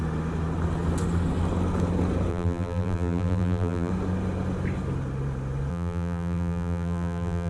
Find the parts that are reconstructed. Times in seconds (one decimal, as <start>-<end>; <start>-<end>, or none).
2.3-3.9; 5.7-7.5